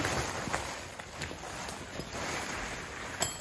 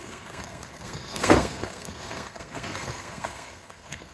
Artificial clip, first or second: second